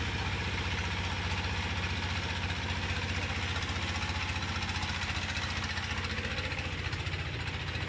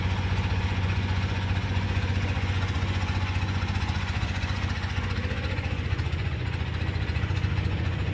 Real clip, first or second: first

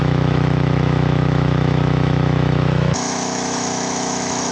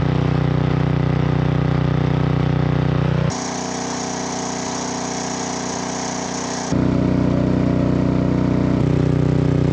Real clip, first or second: second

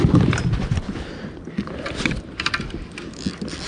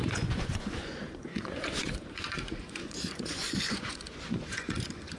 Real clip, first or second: first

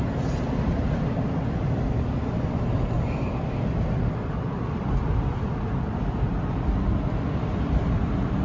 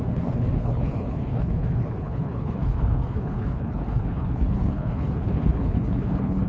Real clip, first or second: first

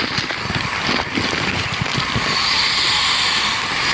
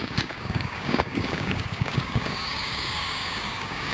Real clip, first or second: first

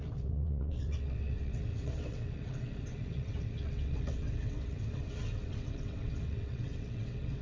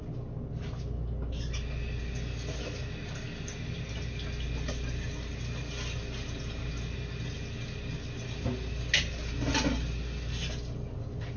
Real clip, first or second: second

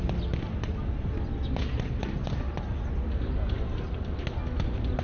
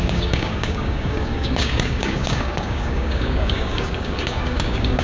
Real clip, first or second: first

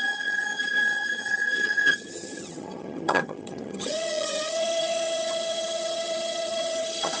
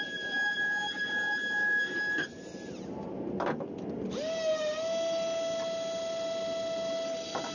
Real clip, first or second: second